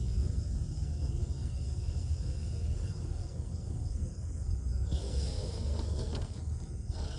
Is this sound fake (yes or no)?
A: yes